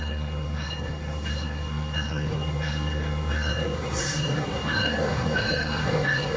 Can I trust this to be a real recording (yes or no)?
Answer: no